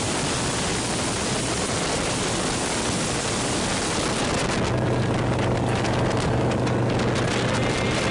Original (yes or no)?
yes